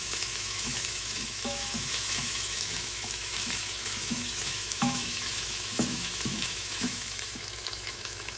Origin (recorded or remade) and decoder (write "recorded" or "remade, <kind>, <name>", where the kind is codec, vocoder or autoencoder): remade, autoencoder, DAC-VAE